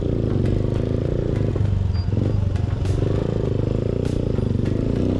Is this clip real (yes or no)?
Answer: yes